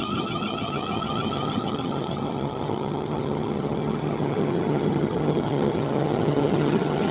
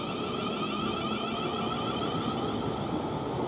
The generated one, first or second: first